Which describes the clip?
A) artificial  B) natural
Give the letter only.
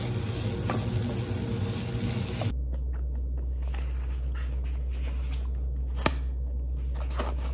B